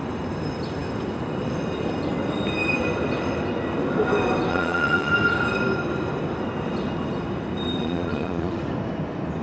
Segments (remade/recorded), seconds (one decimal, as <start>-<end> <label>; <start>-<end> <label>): 0.0-4.5 recorded; 4.5-5.1 remade; 5.1-7.8 recorded; 7.8-8.6 remade; 8.6-9.4 recorded